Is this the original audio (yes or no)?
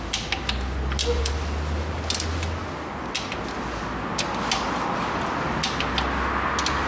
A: yes